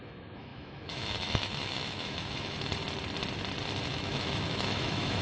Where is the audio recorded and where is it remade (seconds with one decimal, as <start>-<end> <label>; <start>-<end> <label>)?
0.0-2.7 remade; 2.7-3.9 recorded; 3.9-5.2 remade